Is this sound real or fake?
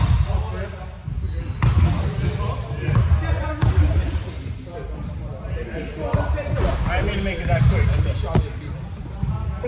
real